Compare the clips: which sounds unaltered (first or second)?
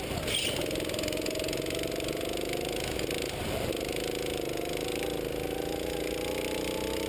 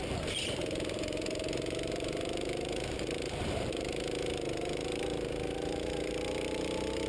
first